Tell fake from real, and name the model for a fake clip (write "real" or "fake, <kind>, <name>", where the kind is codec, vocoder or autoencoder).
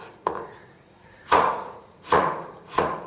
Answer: fake, vocoder, Vocos